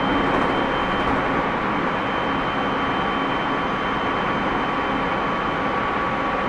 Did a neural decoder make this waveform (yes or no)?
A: no